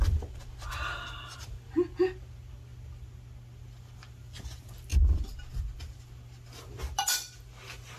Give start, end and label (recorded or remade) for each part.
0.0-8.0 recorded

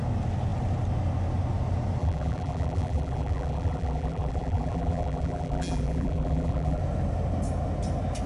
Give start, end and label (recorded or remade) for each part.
0.0-2.0 recorded; 2.0-6.8 remade; 6.8-8.3 recorded

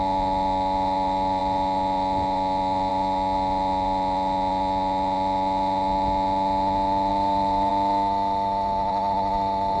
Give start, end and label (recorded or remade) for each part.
0.0-7.1 recorded; 7.1-7.7 remade; 7.7-9.8 recorded

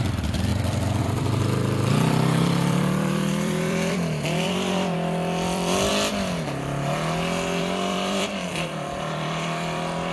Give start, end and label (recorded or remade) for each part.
0.0-5.9 remade; 5.9-7.6 recorded; 7.6-10.1 remade

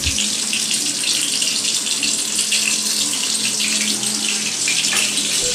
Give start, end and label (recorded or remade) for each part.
0.0-5.5 recorded

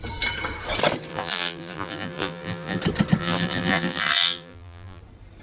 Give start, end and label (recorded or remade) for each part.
0.0-1.1 recorded; 1.1-2.8 remade; 2.8-3.2 recorded; 3.2-5.0 remade; 5.0-5.4 recorded